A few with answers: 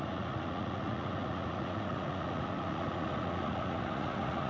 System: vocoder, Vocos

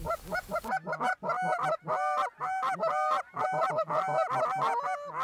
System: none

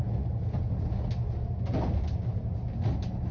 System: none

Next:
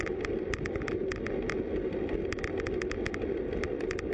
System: none